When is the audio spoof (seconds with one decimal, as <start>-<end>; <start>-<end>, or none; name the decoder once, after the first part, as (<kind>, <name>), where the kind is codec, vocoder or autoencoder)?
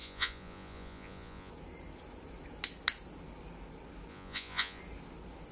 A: 0.0-1.5 (vocoder, Vocos); 4.1-4.8